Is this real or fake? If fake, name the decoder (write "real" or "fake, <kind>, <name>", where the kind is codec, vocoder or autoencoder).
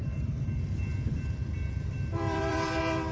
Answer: fake, vocoder, BigVGAN v2